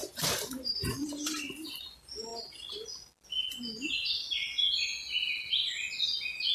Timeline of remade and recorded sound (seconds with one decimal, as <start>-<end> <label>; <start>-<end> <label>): 0.0-1.8 remade; 1.8-6.5 recorded